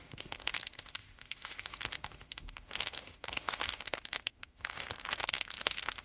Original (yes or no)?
no